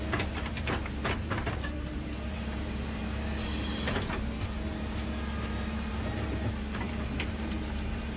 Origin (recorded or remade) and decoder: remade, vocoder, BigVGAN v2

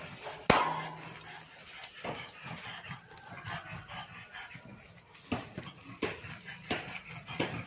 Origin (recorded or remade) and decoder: recorded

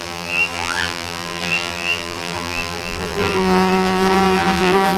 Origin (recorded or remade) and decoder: remade, vocoder, BigVGAN v2